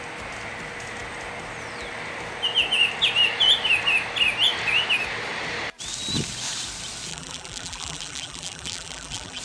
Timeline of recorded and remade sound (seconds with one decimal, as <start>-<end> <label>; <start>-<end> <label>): 0.0-7.1 recorded; 7.1-9.4 remade